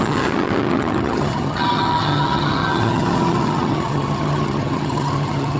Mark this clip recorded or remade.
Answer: remade